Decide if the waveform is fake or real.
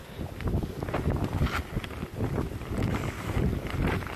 real